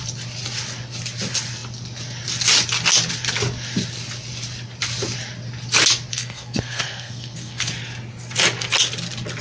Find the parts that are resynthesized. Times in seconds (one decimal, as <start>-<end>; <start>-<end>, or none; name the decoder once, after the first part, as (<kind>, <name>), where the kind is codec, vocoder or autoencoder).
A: 6.1-7.7 (codec, SNAC)